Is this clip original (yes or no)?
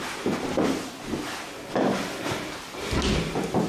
yes